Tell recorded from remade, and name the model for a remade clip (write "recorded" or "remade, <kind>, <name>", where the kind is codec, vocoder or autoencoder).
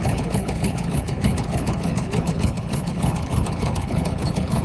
remade, codec, HILCodec